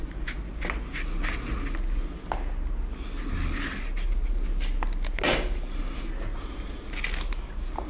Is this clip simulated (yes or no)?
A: no